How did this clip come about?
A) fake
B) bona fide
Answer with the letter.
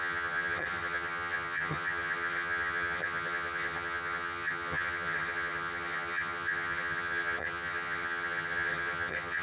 A